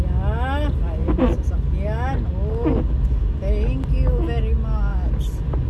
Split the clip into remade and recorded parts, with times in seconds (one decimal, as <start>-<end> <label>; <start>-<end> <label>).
0.0-5.7 recorded